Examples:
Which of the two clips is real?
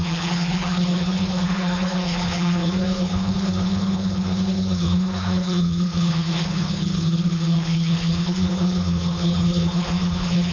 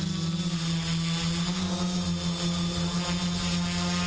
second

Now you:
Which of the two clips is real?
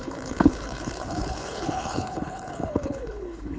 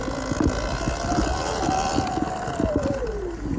second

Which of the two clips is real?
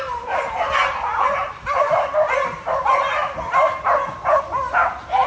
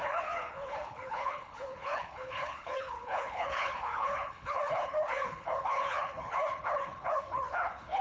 first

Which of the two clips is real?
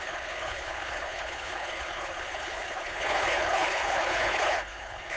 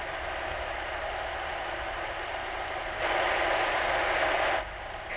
second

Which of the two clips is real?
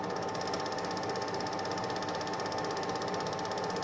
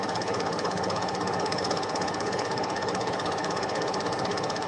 first